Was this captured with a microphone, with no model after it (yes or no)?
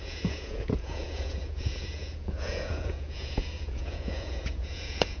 no